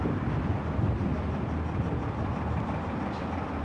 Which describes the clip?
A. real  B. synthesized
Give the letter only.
A